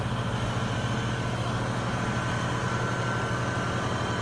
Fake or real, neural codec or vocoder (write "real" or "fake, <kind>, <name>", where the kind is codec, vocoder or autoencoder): real